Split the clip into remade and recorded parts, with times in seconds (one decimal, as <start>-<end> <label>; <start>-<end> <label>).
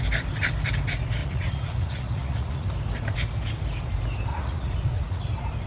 0.0-1.2 recorded; 1.2-2.7 remade; 2.7-4.3 recorded; 4.3-5.2 remade; 5.2-5.7 recorded